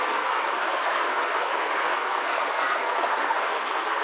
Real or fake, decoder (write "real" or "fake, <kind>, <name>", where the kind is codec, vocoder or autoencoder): fake, codec, SNAC